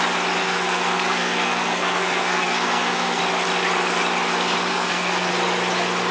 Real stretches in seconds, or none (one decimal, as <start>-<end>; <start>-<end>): 0.0-0.4; 3.2-4.7; 5.3-6.1

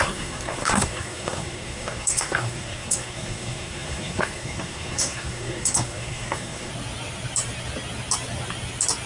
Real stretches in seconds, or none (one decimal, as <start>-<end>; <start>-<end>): 6.7-9.1

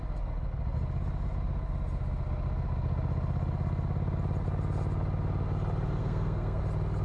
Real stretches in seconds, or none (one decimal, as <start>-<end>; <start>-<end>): 0.0-6.0; 6.6-7.0

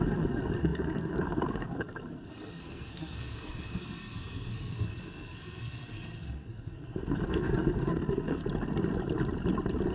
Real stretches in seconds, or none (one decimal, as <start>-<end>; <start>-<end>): 8.4-9.9

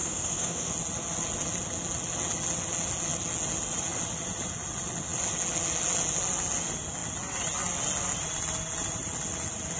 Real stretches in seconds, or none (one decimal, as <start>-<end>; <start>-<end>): 0.7-9.8